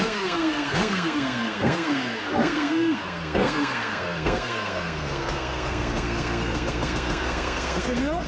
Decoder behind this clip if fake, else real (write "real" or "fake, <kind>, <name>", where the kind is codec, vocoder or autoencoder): fake, codec, SNAC